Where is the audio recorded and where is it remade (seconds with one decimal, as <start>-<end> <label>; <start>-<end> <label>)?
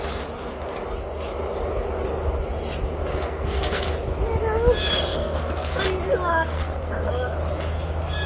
0.0-3.1 recorded; 3.1-3.9 remade; 3.9-5.1 recorded; 5.1-5.8 remade; 5.8-6.3 recorded; 6.3-7.1 remade; 7.1-8.3 recorded